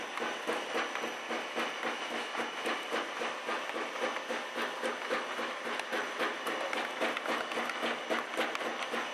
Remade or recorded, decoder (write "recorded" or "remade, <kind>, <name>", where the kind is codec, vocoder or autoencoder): recorded